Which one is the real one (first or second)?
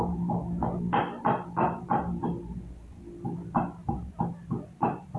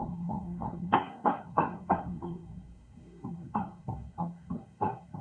first